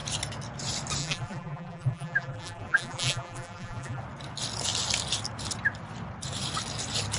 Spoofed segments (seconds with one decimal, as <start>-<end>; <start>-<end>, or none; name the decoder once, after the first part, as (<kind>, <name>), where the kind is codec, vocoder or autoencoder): 1.0-4.0 (vocoder, BigVGAN v2)